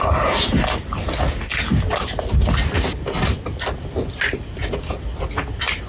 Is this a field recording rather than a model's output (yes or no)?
yes